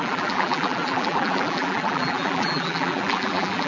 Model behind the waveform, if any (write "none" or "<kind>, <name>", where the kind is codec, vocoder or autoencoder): vocoder, BigVGAN v2